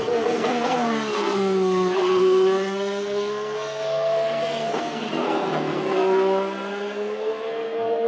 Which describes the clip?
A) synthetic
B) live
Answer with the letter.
A